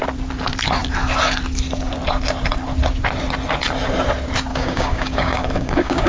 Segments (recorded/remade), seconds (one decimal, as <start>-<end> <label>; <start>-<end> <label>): 0.0-4.5 recorded; 4.5-6.1 remade